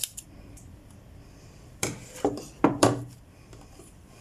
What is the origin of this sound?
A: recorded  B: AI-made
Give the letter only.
B